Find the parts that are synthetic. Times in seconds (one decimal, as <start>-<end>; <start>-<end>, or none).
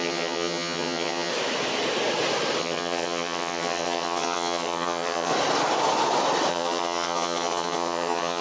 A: 0.0-1.3; 2.6-5.3; 6.5-8.4